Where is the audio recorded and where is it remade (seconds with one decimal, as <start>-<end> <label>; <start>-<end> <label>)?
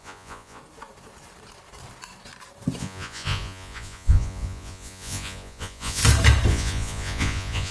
0.0-0.6 remade; 0.6-2.8 recorded; 2.8-6.0 remade; 6.0-6.5 recorded; 6.5-7.7 remade